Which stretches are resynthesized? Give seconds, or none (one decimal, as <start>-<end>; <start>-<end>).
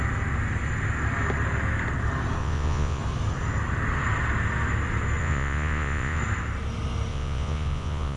2.4-3.0; 5.2-6.2; 7.1-8.2